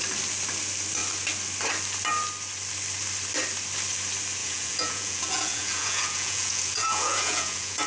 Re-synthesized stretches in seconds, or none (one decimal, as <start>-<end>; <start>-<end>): 4.4-7.9